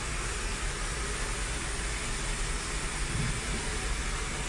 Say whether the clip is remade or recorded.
recorded